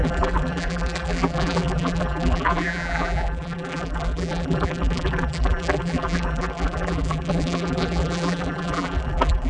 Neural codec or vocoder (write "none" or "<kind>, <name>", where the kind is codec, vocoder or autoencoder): vocoder, BigVGAN v2